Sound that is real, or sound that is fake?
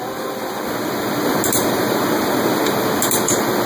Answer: real